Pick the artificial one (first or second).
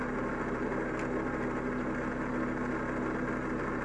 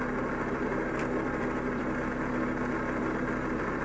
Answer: second